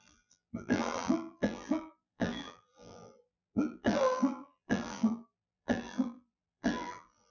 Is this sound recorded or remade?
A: remade